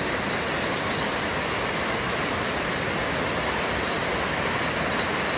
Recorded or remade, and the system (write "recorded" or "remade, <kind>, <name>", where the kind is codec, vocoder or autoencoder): recorded